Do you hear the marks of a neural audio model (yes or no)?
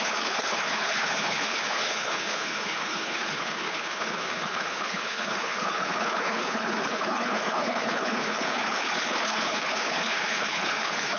yes